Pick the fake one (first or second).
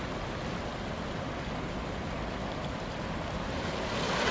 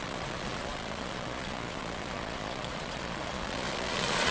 second